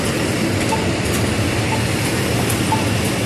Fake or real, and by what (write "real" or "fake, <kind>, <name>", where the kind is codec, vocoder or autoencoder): real